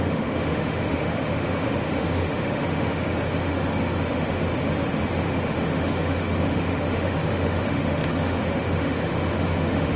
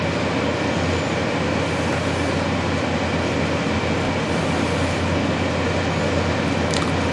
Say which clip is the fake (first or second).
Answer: first